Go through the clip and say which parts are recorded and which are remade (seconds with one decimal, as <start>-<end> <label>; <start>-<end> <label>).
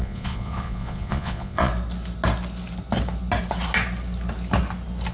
0.0-1.7 remade; 1.7-5.1 recorded